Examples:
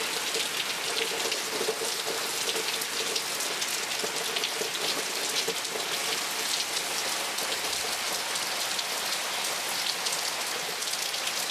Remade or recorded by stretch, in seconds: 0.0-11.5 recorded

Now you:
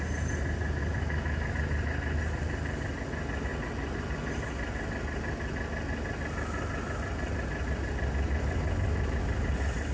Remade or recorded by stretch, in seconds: 0.0-0.8 recorded; 0.8-1.5 remade; 1.5-9.9 recorded

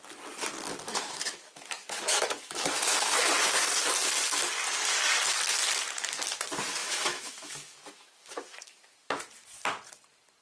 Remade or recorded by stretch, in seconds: 0.0-0.9 recorded; 0.9-3.2 remade; 3.2-6.8 recorded; 6.8-9.2 remade; 9.2-10.4 recorded

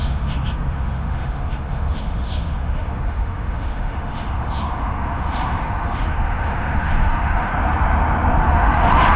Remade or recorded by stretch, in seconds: 0.0-7.5 remade; 7.5-8.4 recorded; 8.4-9.2 remade

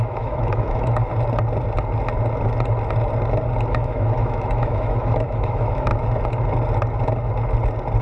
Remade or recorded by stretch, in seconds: 0.0-1.1 remade; 1.1-3.7 recorded; 3.7-5.9 remade; 5.9-8.0 recorded